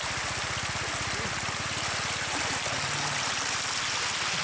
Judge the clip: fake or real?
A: real